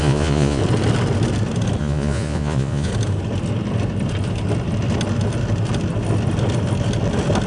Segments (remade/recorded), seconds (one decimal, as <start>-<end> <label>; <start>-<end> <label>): 0.0-0.6 remade; 0.6-1.8 recorded; 1.8-2.9 remade; 2.9-7.5 recorded